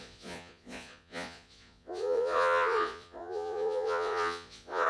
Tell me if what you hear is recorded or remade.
remade